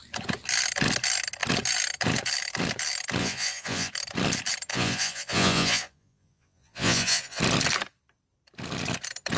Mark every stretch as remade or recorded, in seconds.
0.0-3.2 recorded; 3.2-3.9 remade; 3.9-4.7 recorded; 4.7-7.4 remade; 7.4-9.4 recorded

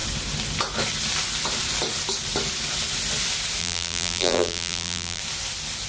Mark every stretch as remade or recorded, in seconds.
0.0-3.6 recorded; 3.6-5.2 remade; 5.2-5.9 recorded

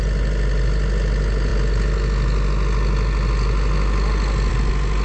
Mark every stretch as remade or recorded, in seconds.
0.0-5.0 recorded

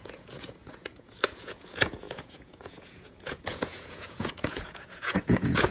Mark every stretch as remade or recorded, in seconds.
0.0-5.7 remade

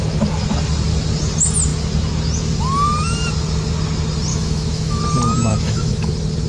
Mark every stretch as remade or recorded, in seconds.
0.0-4.3 recorded; 4.3-5.0 remade; 5.0-5.5 recorded; 5.5-6.1 remade; 6.1-6.5 recorded

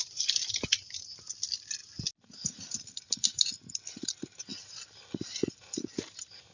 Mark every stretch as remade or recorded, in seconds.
0.0-6.5 recorded

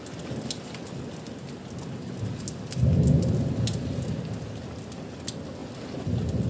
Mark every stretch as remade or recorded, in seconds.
0.0-6.5 recorded